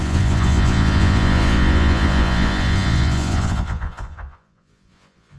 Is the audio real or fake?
fake